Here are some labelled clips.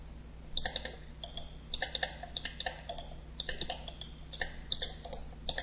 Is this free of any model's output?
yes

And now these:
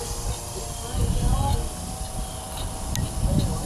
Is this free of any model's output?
yes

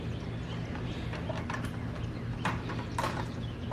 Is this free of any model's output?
yes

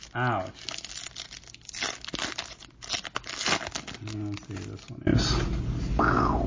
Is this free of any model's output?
yes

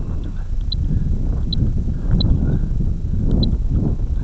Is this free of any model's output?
yes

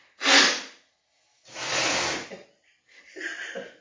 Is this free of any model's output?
yes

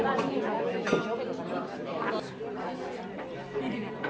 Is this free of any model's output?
yes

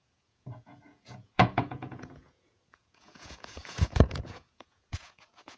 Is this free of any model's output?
no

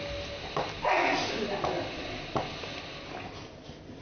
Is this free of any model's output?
yes